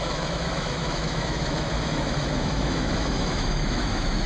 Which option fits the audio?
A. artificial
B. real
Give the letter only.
A